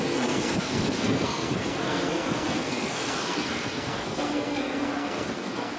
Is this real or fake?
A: fake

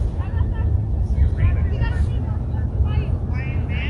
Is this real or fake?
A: real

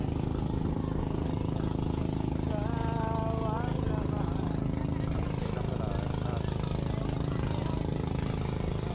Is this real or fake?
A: real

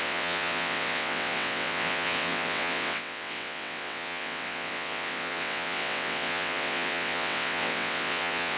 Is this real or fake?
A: fake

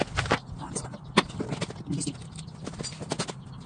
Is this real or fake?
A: real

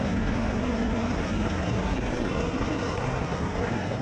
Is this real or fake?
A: fake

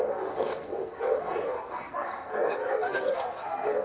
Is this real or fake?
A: fake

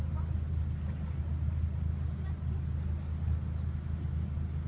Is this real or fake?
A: real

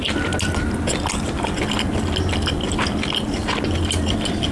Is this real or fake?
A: real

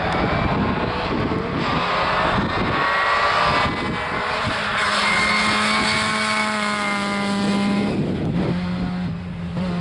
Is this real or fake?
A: real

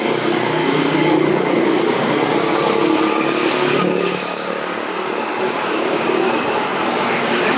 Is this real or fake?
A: fake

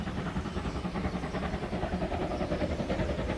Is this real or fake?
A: real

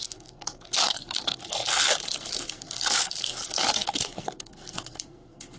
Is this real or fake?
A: fake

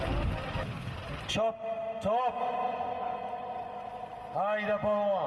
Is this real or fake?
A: real